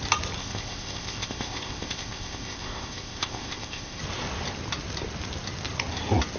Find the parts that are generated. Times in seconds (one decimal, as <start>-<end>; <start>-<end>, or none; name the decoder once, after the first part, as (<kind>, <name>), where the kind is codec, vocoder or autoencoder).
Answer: 0.4-4.0 (codec, ZipCodec)

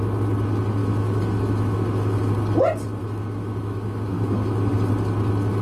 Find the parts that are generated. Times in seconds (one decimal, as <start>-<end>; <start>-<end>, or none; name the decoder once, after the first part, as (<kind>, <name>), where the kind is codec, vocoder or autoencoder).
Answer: 0.8-2.3 (autoencoder, DAC-VAE); 3.0-4.7

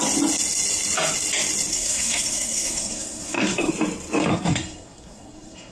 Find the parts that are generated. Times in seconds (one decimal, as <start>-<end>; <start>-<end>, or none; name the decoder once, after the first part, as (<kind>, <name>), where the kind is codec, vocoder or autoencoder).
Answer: 1.7-3.7 (codec, SNAC); 4.3-5.7